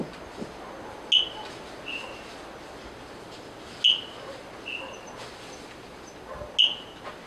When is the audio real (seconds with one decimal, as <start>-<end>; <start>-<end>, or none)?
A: 0.0-7.3